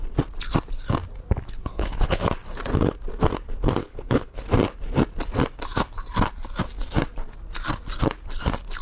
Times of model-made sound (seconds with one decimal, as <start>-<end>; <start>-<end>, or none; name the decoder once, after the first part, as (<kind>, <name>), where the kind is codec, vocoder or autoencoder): 1.7-2.2 (codec, HILCodec); 3.8-4.4